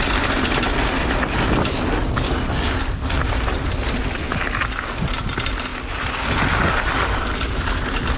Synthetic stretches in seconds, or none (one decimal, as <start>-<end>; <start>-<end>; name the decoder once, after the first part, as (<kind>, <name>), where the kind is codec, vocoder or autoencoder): none